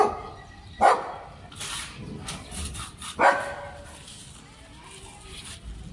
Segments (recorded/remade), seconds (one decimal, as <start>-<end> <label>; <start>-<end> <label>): 0.0-5.9 recorded